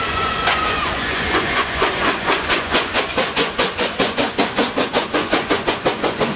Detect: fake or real fake